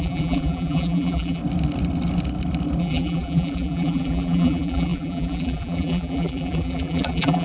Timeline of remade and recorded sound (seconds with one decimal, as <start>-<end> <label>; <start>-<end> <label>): 0.0-1.4 remade; 1.4-2.8 recorded; 2.8-7.4 remade

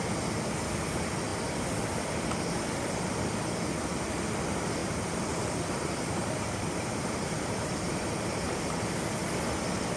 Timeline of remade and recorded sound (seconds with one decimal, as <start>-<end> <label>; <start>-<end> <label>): 0.0-4.8 recorded; 4.8-8.6 remade; 8.6-10.0 recorded

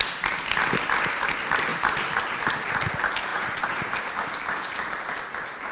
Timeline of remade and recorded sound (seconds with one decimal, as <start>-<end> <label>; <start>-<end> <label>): 0.0-3.3 recorded; 3.3-4.0 remade; 4.0-5.7 recorded

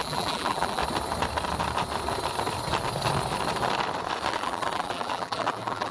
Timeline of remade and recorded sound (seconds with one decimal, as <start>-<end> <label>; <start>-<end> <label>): 0.0-0.8 remade; 0.8-4.3 recorded; 4.3-5.9 remade

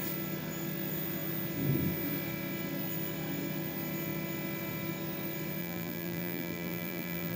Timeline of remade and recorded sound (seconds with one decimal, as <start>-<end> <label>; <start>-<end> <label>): 0.0-5.6 recorded; 5.6-7.4 remade

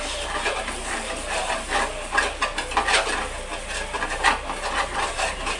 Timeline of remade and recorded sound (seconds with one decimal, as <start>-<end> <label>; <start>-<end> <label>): 0.0-1.4 remade; 1.4-4.8 recorded; 4.8-5.6 remade

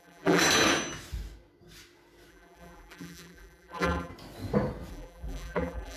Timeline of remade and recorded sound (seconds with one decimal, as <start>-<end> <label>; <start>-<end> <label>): 0.0-0.4 remade; 0.4-2.3 recorded; 2.3-4.1 remade; 4.1-4.9 recorded; 4.9-6.0 remade

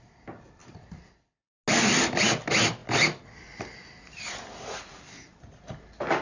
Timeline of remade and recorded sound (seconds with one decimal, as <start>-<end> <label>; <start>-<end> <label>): 0.0-2.8 recorded; 2.8-5.0 remade; 5.0-6.2 recorded